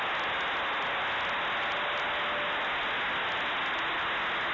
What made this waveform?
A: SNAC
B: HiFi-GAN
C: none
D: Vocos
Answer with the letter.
C